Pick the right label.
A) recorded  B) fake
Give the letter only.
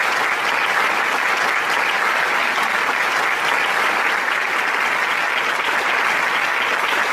B